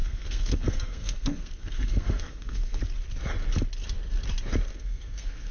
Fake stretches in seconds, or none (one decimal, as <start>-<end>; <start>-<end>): 0.0-2.8; 4.7-5.5